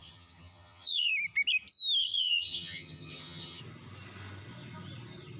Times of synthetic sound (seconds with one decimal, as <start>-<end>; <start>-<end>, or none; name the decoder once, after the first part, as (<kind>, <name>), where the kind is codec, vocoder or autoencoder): 0.0-1.1 (vocoder, HiFi-GAN); 2.0-3.6